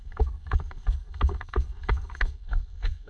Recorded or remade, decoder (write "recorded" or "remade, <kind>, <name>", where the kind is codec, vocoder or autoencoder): remade, codec, SNAC